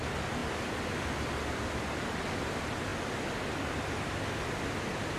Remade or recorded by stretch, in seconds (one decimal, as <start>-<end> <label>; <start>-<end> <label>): 0.0-5.2 recorded